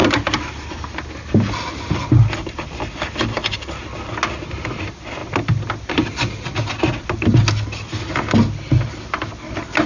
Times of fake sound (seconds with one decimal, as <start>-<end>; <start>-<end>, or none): none